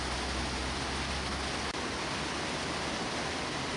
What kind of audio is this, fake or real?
real